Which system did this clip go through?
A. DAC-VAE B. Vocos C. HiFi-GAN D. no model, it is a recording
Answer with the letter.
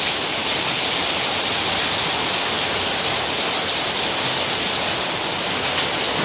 D